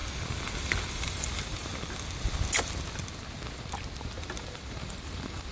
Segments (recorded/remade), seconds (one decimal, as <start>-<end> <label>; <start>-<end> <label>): 0.0-0.9 recorded; 0.9-1.7 remade; 1.7-4.4 recorded; 4.4-5.5 remade